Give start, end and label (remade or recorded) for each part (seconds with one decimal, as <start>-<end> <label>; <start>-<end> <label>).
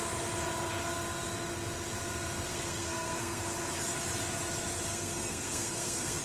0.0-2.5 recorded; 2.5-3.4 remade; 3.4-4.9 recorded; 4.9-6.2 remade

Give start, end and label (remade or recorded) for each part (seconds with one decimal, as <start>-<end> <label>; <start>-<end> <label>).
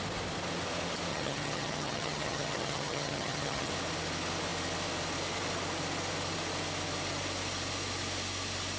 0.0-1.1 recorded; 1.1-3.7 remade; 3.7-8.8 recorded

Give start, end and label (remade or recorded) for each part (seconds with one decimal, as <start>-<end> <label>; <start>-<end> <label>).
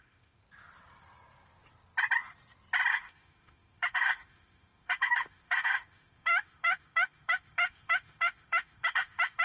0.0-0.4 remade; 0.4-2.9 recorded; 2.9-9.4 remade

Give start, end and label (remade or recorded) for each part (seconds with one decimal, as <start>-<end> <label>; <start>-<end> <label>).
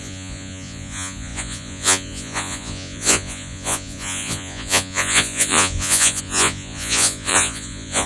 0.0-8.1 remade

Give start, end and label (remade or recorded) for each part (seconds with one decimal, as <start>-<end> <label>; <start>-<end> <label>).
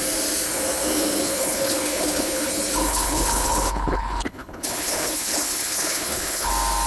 0.0-1.3 recorded; 1.3-2.5 remade; 2.5-2.9 recorded; 2.9-6.5 remade; 6.5-6.9 recorded